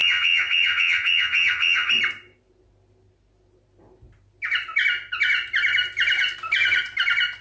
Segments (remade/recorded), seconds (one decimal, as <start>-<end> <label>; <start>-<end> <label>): 0.0-1.9 remade; 1.9-7.4 recorded